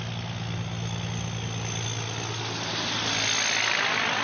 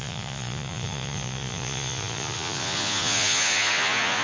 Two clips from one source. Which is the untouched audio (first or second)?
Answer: first